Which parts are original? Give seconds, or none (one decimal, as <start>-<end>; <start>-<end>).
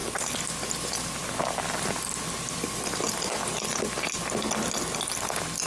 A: 0.0-5.7